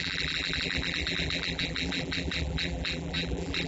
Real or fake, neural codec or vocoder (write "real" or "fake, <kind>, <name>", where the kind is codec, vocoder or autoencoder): fake, vocoder, BigVGAN v2